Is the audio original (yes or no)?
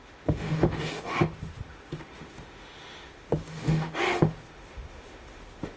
no